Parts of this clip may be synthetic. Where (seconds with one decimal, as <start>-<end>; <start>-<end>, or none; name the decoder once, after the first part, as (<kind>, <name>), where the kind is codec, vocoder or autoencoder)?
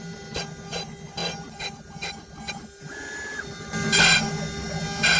none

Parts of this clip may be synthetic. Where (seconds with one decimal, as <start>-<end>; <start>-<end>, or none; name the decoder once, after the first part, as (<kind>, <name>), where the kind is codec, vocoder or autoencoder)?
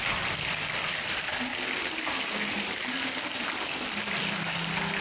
none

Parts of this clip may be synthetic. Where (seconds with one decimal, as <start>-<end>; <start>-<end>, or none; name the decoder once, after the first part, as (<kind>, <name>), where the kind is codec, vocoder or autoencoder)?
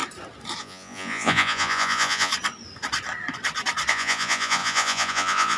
0.6-2.3 (vocoder, Vocos); 3.9-5.6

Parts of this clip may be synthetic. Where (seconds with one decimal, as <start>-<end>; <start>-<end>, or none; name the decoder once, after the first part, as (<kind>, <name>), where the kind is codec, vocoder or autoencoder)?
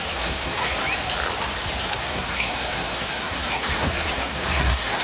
0.0-0.8 (codec, SNAC); 1.8-5.0